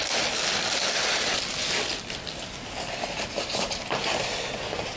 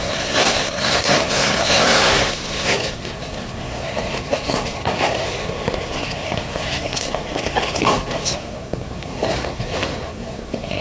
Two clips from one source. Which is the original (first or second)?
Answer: first